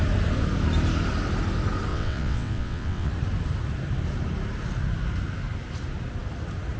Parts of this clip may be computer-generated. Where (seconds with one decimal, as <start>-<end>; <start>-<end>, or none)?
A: 1.9-3.1